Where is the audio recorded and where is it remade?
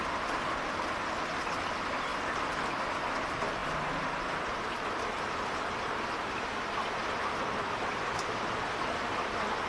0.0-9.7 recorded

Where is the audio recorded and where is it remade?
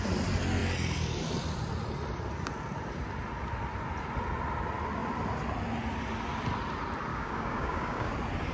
0.0-7.1 recorded; 7.1-8.1 remade; 8.1-8.5 recorded